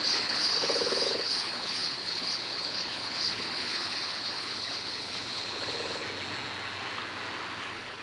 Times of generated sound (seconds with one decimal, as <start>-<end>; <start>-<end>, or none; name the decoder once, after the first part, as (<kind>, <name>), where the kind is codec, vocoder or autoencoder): 0.0-6.0 (codec, HILCodec); 7.6-8.0